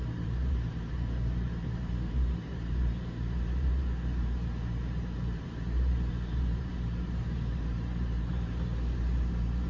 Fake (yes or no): yes